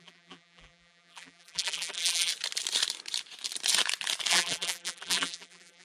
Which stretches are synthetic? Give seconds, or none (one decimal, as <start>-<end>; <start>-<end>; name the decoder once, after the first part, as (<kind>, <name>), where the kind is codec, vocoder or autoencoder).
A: 0.0-2.3 (vocoder, BigVGAN v2); 4.3-5.8